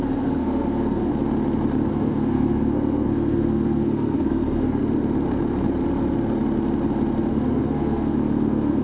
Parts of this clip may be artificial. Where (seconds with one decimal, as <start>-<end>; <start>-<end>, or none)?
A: 0.0-1.1; 1.9-4.8; 7.3-8.8